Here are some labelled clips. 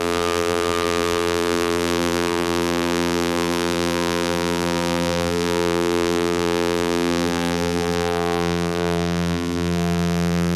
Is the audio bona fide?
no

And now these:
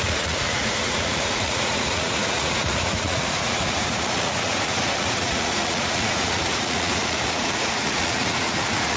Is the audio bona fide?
no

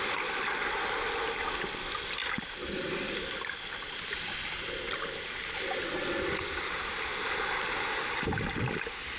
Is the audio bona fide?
yes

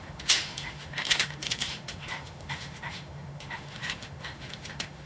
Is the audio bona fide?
no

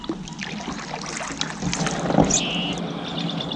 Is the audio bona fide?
yes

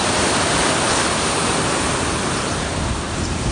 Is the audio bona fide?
no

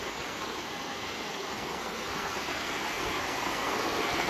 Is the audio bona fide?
no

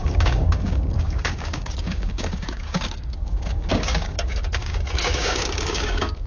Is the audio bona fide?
no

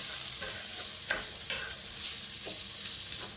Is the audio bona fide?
yes